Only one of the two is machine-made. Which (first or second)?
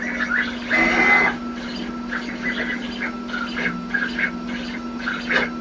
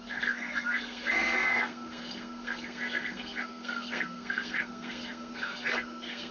second